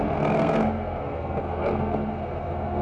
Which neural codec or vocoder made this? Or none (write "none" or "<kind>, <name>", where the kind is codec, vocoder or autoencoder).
codec, SNAC